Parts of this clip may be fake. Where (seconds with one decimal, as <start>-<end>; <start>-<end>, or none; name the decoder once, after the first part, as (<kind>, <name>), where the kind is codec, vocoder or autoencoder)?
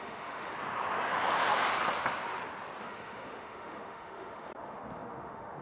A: 0.0-0.5 (autoencoder, DAC-VAE); 1.1-1.6; 2.8-5.6